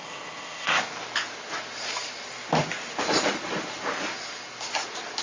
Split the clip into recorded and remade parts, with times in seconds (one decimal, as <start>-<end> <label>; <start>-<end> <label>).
0.0-0.8 remade; 0.8-5.2 recorded